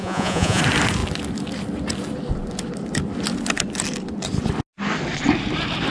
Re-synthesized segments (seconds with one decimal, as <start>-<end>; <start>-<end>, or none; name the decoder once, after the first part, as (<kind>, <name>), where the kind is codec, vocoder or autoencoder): 0.0-0.6 (vocoder, Vocos)